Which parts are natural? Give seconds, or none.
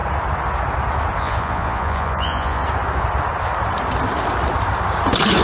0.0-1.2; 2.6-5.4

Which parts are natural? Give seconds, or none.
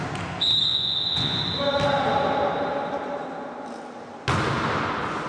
0.0-0.7; 1.4-5.3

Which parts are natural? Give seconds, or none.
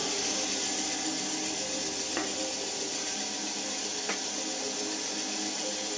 0.0-6.0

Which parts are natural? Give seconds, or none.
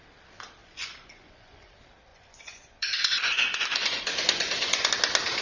0.0-0.6; 1.7-2.1; 4.9-5.4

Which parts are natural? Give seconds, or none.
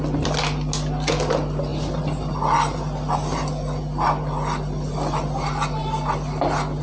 0.0-6.8